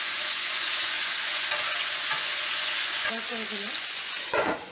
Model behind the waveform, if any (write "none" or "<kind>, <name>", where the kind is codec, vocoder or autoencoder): vocoder, Vocos